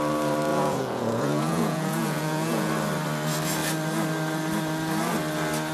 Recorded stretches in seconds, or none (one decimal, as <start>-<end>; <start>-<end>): 0.0-0.5; 2.7-5.7